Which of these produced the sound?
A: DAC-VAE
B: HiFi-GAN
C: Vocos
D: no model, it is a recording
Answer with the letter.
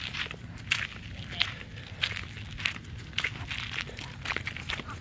D